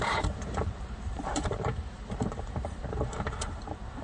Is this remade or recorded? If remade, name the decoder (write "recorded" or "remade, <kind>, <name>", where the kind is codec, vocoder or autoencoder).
remade, vocoder, BigVGAN v2